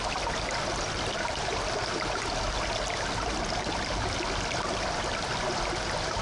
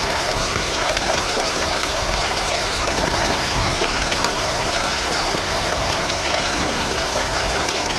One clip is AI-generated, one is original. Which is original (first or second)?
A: first